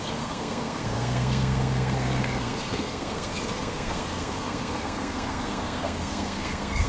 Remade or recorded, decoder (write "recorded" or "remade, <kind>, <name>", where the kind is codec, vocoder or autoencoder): remade, codec, SNAC